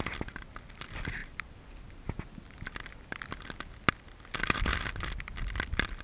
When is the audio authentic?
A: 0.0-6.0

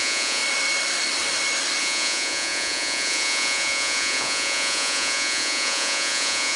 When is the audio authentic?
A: 0.4-1.8

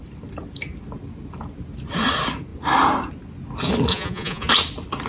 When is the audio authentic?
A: 0.0-3.9; 4.5-5.1

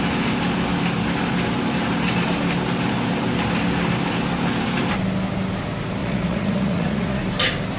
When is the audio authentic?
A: 0.0-6.0; 7.2-7.8

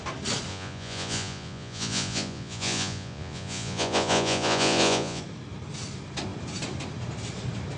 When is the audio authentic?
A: 0.0-0.5; 5.2-7.8

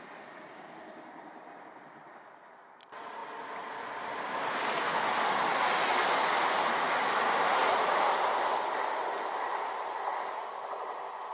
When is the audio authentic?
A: 0.0-7.6; 8.1-11.3

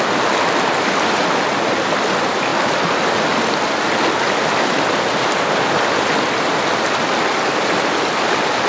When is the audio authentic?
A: 0.0-8.7